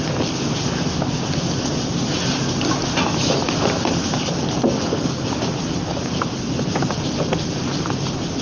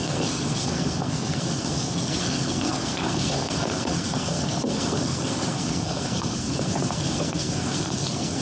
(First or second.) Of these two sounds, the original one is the first